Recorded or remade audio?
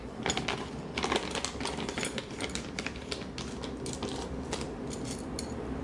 recorded